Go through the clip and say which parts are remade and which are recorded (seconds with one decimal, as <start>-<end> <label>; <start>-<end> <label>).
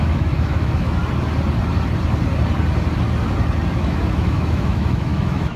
0.0-1.0 remade; 1.0-3.7 recorded; 3.7-5.6 remade